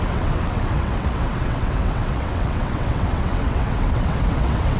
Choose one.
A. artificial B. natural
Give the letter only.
A